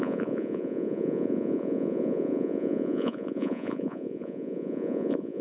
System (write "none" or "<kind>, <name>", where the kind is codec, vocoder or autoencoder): vocoder, Vocos